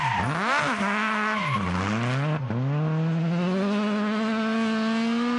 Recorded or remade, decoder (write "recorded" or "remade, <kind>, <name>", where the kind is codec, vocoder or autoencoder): recorded